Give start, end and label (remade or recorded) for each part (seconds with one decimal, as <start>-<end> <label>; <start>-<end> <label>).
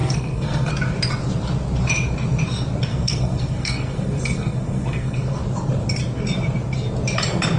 0.0-0.7 remade; 0.7-2.9 recorded; 2.9-5.4 remade; 5.4-7.6 recorded